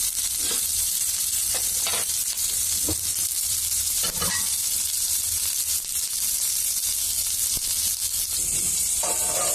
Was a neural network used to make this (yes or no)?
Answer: yes